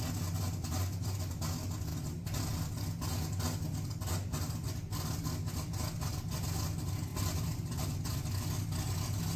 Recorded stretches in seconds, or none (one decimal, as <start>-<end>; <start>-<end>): 0.0-9.4